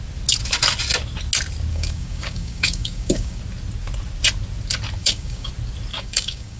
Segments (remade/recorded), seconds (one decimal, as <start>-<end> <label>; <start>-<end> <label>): 0.0-1.7 recorded; 1.7-3.4 remade; 3.4-5.0 recorded; 5.0-5.5 remade; 5.5-5.9 recorded; 5.9-6.6 remade